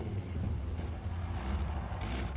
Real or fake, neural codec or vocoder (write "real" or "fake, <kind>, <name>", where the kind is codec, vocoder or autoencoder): real